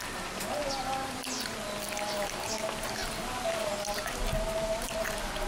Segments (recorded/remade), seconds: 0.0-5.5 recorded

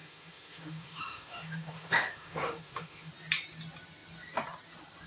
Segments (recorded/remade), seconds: 0.0-3.1 remade; 3.1-5.1 recorded